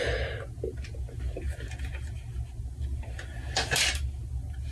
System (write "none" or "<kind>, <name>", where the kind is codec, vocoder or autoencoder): none